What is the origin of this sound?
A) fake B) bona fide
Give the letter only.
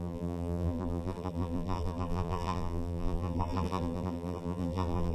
A